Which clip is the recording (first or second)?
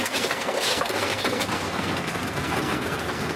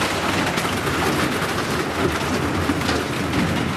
second